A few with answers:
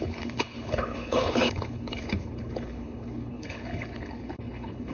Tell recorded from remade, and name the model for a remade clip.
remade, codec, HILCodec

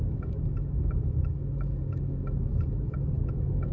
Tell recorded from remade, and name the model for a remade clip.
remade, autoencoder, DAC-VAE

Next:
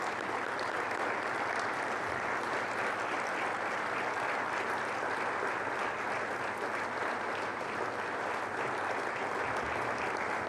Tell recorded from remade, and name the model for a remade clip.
recorded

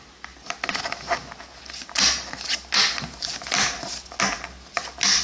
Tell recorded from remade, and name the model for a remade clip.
recorded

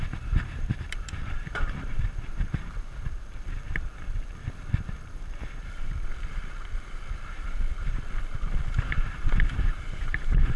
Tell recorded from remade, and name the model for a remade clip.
remade, vocoder, BigVGAN v2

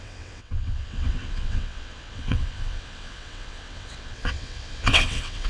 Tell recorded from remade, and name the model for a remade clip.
remade, vocoder, WaveNeXt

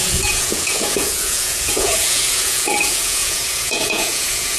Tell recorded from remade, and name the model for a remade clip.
remade, vocoder, Vocos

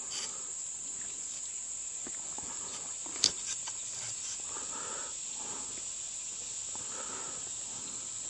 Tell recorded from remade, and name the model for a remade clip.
recorded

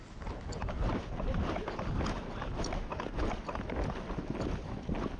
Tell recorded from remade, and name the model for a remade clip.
recorded